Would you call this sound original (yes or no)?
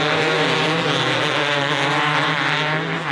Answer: yes